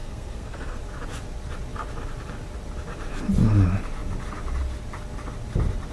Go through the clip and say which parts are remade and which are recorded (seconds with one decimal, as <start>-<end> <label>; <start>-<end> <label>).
0.0-0.8 remade; 0.8-5.9 recorded